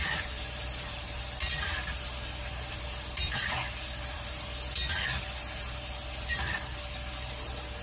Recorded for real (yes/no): no